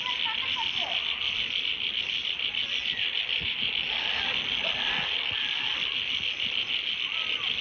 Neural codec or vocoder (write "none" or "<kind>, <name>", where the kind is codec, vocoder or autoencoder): none